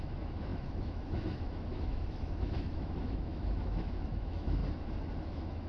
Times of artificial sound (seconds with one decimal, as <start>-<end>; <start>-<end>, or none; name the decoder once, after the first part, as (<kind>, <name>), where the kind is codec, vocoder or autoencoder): 0.0-4.6 (autoencoder, DAC-VAE); 5.2-5.7